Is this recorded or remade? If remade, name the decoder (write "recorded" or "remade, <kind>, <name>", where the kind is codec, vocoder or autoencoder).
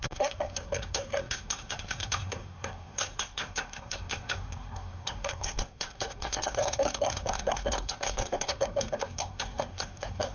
remade, codec, SNAC